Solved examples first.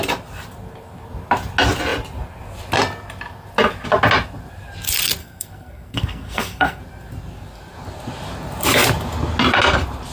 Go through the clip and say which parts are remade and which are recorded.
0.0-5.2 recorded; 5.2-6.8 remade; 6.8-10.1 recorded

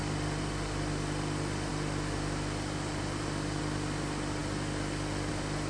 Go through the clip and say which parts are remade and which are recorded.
0.0-5.7 recorded